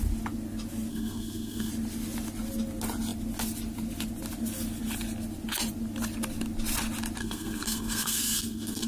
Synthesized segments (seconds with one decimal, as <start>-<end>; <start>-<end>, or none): 0.9-1.7; 7.2-8.9